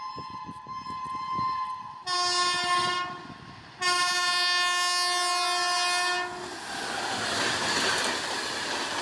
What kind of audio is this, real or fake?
real